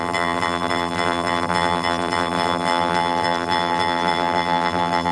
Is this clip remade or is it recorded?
remade